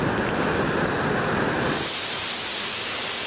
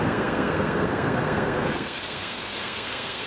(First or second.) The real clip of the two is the first